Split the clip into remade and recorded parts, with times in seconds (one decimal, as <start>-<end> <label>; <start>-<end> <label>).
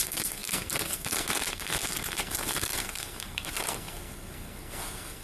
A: 0.0-5.2 remade